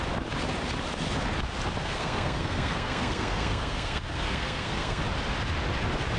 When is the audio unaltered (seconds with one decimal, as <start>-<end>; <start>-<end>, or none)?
0.0-1.8; 5.0-6.2